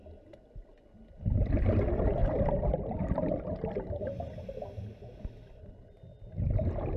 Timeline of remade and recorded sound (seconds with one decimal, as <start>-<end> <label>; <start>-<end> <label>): 0.0-2.2 recorded; 2.2-4.3 remade; 4.3-7.0 recorded